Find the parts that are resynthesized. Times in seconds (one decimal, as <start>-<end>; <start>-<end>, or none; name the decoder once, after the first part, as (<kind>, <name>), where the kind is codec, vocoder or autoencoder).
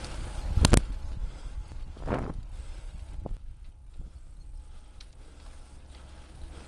none